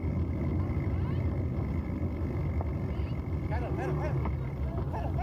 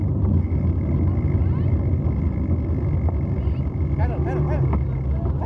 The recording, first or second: second